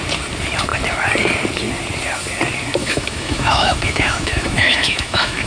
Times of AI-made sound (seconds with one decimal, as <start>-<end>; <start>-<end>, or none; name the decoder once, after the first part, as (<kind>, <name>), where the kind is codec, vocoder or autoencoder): 2.8-5.5 (autoencoder, DAC-VAE)